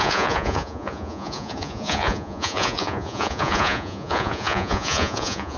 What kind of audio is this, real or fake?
fake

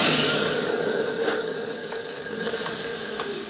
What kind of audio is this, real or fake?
fake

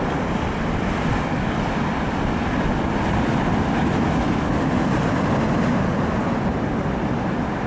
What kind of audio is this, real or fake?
real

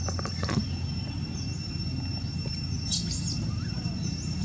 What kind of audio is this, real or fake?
real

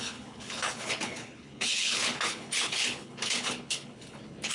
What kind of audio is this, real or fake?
fake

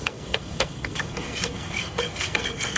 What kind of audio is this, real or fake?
fake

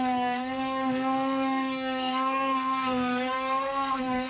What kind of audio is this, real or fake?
fake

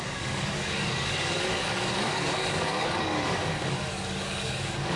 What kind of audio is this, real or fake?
fake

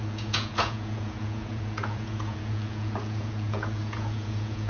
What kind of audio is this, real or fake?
fake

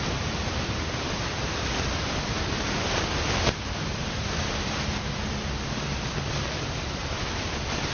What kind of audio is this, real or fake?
real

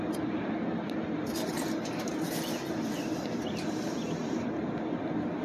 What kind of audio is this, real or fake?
real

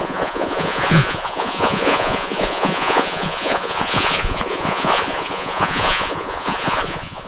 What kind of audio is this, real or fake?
fake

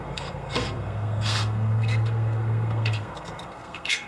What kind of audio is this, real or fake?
fake